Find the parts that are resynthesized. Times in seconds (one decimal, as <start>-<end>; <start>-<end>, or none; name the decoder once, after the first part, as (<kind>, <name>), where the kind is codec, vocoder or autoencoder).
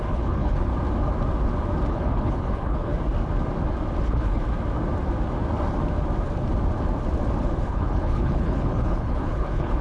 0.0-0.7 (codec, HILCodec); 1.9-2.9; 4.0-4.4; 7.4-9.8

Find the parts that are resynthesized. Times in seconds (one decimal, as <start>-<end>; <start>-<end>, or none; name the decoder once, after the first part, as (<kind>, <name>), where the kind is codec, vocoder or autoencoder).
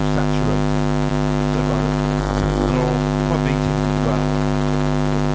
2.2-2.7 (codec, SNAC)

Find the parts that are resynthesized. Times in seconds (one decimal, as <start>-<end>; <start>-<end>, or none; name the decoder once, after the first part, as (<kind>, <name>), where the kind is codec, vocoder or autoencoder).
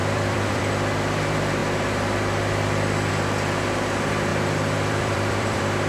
0.0-0.6 (vocoder, BigVGAN v2); 4.3-5.9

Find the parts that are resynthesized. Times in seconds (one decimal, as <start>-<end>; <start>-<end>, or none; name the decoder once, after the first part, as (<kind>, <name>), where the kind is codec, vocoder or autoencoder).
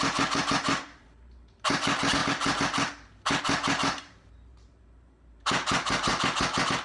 0.0-2.2 (vocoder, BigVGAN v2); 3.4-6.1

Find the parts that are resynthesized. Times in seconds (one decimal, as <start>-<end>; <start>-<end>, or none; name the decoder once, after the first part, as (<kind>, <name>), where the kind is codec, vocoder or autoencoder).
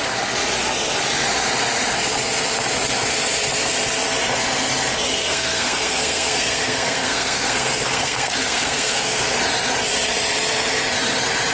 5.1-9.4 (codec, SNAC)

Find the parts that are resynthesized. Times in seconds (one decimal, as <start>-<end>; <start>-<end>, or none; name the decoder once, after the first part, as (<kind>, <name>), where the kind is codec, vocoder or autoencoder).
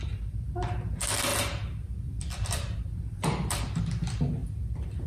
1.3-3.8 (vocoder, BigVGAN v2); 4.4-5.1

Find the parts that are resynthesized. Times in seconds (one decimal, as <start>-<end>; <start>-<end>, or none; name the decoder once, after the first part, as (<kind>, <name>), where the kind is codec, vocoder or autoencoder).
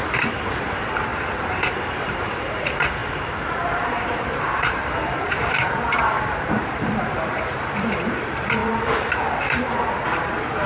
0.0-1.1 (vocoder, BigVGAN v2); 1.7-3.0; 3.5-10.7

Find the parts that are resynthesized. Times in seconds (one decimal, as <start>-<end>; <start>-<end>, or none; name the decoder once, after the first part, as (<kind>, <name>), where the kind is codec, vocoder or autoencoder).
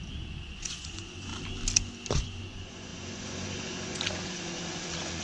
0.0-1.3 (vocoder, Vocos); 2.1-5.2